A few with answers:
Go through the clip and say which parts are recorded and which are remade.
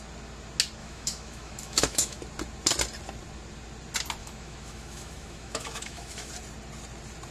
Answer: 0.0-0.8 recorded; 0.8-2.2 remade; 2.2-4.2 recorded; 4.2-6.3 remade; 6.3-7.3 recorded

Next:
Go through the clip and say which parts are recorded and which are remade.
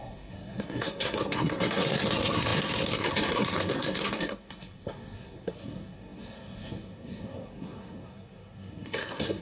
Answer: 0.0-9.4 remade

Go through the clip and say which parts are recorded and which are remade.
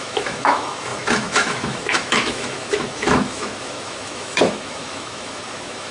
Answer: 0.0-5.9 remade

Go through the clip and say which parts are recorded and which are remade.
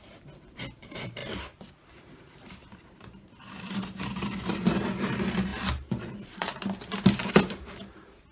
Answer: 0.0-1.2 remade; 1.2-1.9 recorded; 1.9-8.3 remade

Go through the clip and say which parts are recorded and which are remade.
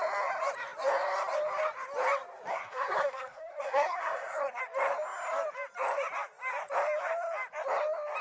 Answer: 0.0-2.5 recorded; 2.5-4.6 remade; 4.6-8.2 recorded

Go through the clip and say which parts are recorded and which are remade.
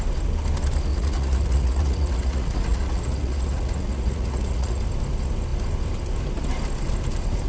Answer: 0.0-0.9 recorded; 0.9-4.8 remade; 4.8-7.5 recorded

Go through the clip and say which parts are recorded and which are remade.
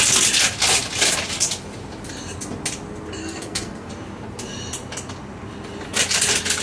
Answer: 0.0-3.2 recorded; 3.2-3.9 remade; 3.9-6.6 recorded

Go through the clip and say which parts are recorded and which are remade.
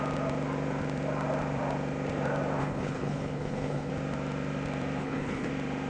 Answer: 0.0-2.6 recorded; 2.6-3.9 remade; 3.9-5.0 recorded; 5.0-5.5 remade; 5.5-5.9 recorded